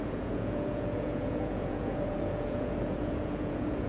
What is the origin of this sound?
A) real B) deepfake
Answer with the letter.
B